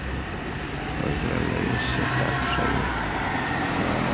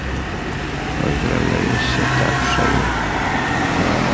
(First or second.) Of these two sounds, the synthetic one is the first